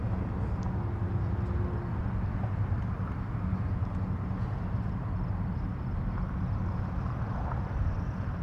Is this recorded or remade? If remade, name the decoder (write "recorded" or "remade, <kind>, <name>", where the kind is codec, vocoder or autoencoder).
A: recorded